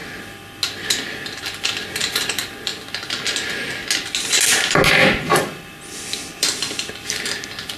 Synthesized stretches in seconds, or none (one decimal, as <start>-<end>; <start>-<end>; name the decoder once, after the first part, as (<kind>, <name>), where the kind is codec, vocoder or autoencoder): 1.4-2.7 (vocoder, BigVGAN v2); 6.2-7.8